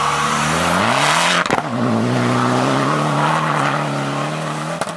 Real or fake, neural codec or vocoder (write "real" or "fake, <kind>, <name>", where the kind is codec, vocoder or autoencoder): real